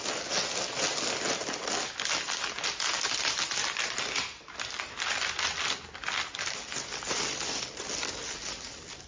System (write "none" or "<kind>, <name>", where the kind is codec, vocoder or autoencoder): none